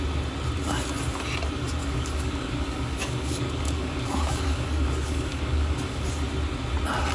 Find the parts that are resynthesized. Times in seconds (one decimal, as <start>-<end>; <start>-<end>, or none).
1.8-6.1